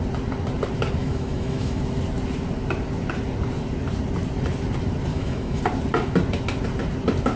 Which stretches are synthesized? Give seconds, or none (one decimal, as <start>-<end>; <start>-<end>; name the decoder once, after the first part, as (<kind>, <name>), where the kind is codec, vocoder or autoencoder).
1.0-1.8 (autoencoder, DAC-VAE); 5.1-5.6